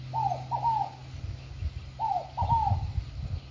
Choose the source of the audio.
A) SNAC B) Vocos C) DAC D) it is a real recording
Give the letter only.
D